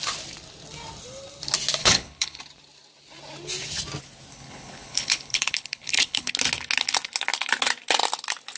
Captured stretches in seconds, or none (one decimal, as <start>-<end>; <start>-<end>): 0.0-1.8; 2.4-4.3; 6.3-8.6